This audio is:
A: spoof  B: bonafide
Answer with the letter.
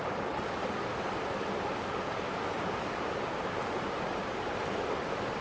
B